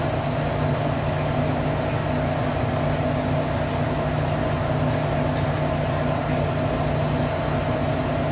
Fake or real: real